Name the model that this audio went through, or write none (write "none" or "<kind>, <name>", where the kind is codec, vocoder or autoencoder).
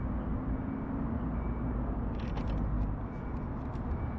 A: none